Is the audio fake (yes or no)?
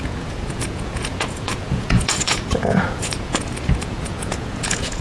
yes